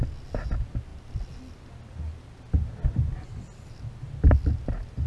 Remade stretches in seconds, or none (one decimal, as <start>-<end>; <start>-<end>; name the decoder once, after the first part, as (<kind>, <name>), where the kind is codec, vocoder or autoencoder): none